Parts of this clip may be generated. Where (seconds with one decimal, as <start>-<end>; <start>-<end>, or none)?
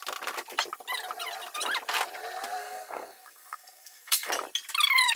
2.6-4.3